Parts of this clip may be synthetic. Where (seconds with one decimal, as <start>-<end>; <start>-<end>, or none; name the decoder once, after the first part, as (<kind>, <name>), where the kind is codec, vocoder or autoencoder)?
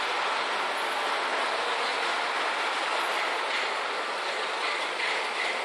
none